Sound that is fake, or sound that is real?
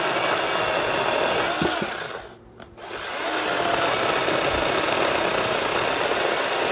real